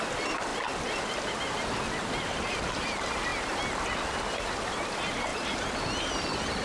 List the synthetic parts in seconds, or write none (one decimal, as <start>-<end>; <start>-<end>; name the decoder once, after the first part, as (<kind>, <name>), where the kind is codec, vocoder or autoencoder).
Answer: none